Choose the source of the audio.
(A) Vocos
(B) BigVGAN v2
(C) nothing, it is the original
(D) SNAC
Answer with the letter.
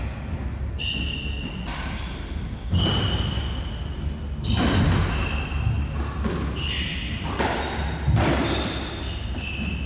C